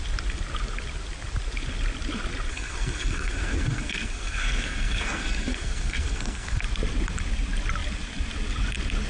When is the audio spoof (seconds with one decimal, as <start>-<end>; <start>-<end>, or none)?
2.5-6.6